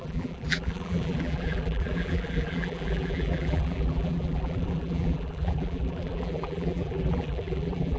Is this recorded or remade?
remade